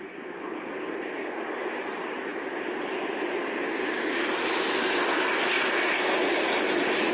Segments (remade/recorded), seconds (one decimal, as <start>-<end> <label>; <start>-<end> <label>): 0.0-7.1 recorded